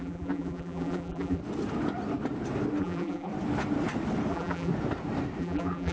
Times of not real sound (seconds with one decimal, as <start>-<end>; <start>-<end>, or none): 0.0-1.4; 2.8-3.3; 4.3-4.7; 5.4-5.9